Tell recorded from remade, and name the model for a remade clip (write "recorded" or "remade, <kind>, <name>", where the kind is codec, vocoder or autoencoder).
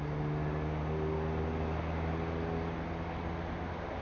recorded